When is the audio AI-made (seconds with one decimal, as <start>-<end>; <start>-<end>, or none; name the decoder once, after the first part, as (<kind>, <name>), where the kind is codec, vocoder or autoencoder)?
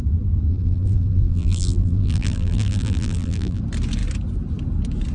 0.5-3.6 (vocoder, BigVGAN v2)